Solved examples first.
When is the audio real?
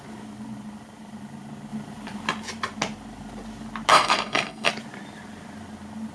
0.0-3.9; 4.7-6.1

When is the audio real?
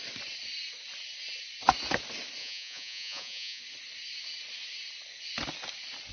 0.0-2.4; 3.6-6.1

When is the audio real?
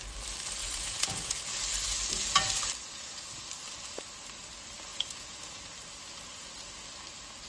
0.0-0.6; 1.6-4.9; 5.6-7.5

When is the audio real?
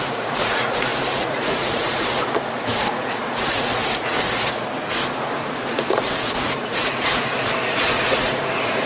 none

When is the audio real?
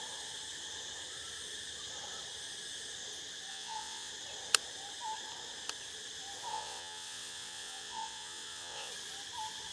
0.0-3.5; 4.1-6.5; 8.9-9.7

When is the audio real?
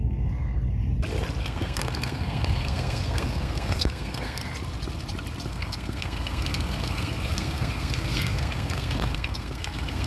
0.8-1.4; 4.4-5.5